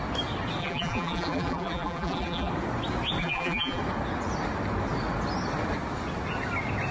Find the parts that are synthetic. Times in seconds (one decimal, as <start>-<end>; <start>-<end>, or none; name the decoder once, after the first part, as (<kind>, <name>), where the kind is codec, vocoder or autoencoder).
0.6-2.5 (vocoder, BigVGAN v2); 3.2-3.8